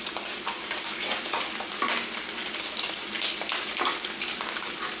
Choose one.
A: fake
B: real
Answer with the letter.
B